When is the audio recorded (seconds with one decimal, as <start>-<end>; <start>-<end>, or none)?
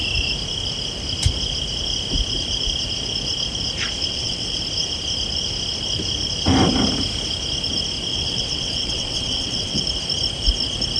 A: 0.0-4.1; 4.6-8.1; 9.8-11.0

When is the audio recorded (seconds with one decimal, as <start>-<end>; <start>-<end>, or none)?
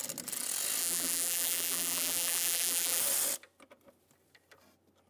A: 0.0-0.8; 3.0-5.1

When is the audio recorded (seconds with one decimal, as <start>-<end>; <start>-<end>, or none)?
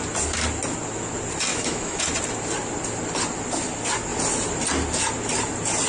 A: 0.0-1.5; 2.0-5.9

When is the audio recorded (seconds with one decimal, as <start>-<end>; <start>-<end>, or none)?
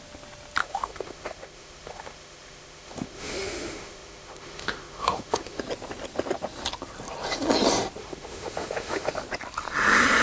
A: 0.0-0.6; 5.6-8.0; 9.1-10.2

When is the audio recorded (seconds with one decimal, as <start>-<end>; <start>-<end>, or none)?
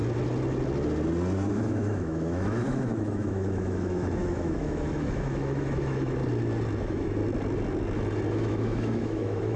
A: 0.0-1.5; 6.2-6.8; 7.2-8.3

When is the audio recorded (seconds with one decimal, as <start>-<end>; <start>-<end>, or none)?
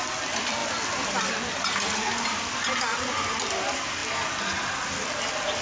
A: 0.0-5.6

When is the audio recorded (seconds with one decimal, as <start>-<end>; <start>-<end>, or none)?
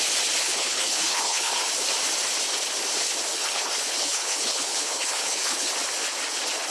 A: 0.0-0.4; 1.7-3.3; 5.7-6.7